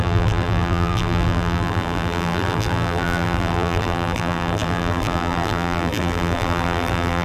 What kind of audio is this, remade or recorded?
remade